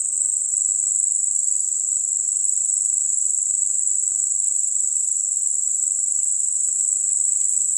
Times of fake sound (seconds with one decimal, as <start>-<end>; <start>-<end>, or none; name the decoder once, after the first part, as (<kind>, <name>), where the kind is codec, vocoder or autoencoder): none